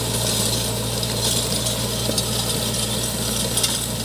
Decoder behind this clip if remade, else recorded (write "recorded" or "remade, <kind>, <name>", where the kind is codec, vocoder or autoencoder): recorded